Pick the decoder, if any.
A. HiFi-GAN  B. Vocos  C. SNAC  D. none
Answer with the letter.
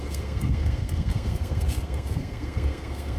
C